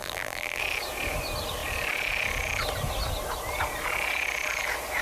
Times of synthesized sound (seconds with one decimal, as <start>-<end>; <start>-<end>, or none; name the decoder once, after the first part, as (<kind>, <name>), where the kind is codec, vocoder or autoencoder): 0.0-0.6 (vocoder, BigVGAN v2)